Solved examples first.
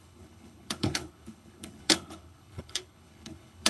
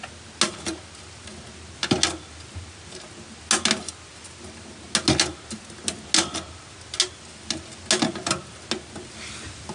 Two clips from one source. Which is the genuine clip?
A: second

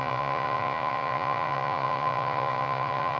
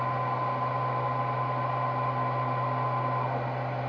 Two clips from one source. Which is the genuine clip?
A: second